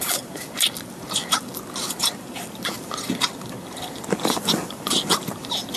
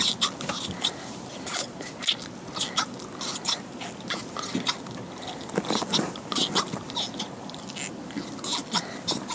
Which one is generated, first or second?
first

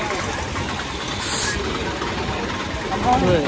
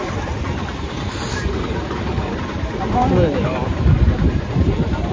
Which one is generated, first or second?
second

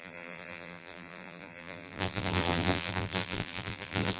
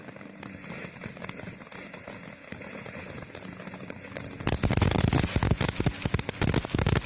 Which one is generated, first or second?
first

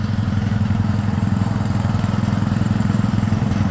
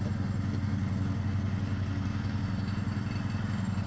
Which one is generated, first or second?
first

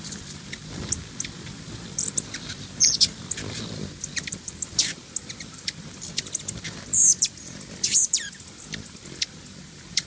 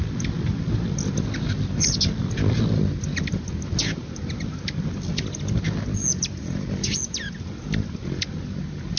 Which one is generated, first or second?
first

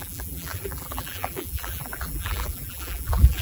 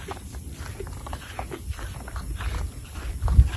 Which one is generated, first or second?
first